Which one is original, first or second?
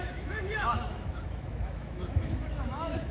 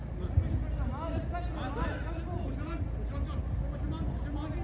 second